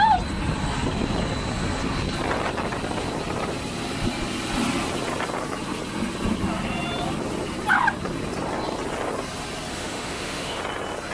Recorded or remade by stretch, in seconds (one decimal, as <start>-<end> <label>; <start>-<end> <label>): 0.0-9.7 recorded; 9.7-10.6 remade; 10.6-11.1 recorded